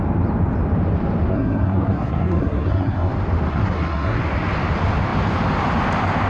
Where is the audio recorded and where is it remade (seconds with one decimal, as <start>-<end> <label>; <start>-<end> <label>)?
0.0-1.3 recorded; 1.3-3.1 remade; 3.1-3.5 recorded; 3.5-4.2 remade; 4.2-6.3 recorded